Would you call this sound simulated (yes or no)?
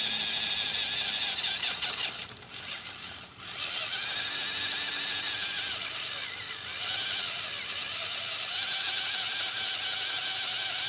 no